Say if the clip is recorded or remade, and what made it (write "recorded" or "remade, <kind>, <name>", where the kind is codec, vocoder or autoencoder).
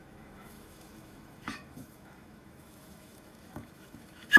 remade, autoencoder, DAC-VAE